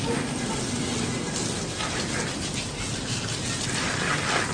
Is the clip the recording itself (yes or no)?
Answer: yes